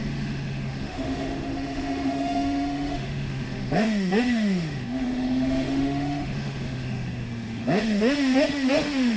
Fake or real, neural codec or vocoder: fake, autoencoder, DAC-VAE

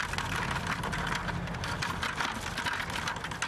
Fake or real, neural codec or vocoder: real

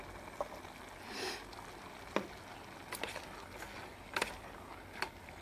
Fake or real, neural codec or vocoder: real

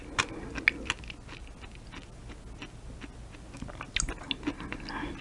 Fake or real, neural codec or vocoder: real